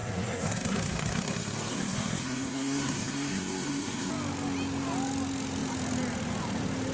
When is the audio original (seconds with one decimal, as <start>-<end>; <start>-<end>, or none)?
4.1-6.9

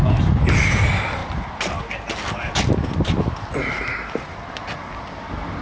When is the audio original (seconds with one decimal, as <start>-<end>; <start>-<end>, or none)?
0.0-5.6

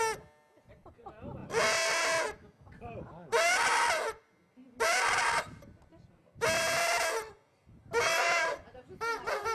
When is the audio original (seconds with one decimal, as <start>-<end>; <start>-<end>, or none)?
0.0-9.5

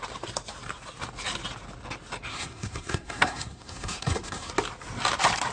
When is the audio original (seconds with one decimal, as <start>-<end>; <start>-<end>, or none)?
0.0-2.3; 4.5-5.5

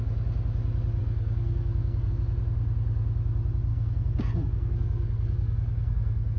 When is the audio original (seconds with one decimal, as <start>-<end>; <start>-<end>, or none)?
0.0-1.0; 2.1-3.7